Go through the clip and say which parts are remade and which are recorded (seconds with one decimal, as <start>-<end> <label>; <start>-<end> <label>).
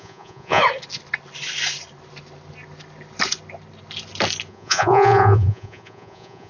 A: 0.0-0.6 remade; 0.6-4.5 recorded; 4.5-6.5 remade